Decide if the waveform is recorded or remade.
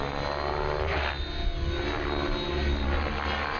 recorded